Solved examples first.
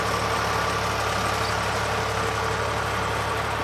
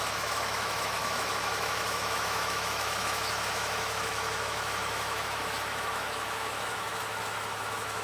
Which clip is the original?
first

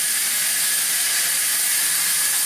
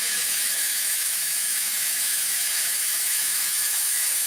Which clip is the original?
first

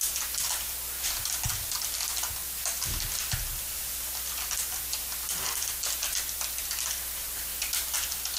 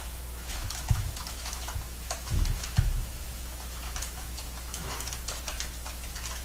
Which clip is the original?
first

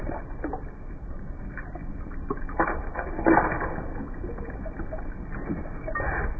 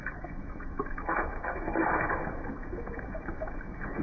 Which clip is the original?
first